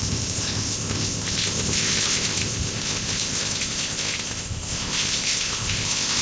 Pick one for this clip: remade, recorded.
remade